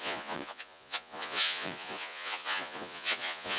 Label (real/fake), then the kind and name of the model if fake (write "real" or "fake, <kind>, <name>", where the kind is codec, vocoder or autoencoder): fake, vocoder, Vocos